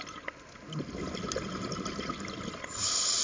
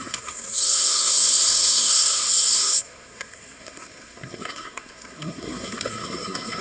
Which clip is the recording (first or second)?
first